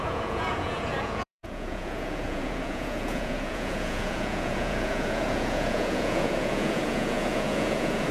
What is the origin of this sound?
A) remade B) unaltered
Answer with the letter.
A